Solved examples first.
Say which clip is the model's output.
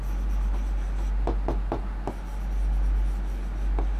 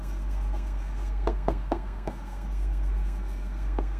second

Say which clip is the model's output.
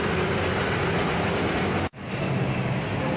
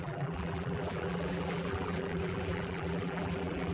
second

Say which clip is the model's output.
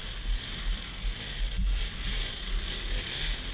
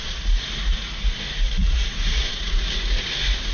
second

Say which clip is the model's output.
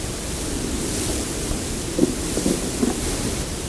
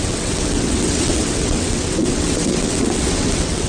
second